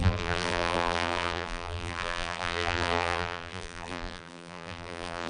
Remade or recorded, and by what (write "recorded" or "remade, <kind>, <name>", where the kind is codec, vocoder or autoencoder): remade, vocoder, BigVGAN v2